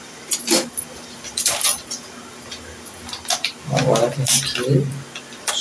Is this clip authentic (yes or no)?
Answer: no